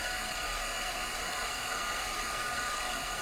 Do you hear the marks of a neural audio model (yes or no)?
yes